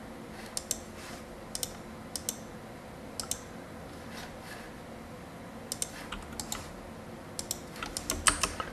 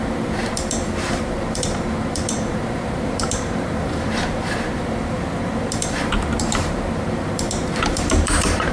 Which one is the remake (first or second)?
second